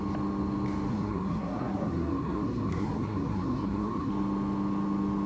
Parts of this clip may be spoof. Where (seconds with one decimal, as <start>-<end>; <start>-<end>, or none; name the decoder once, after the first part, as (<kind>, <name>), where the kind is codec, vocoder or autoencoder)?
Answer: 0.9-4.1 (codec, SNAC)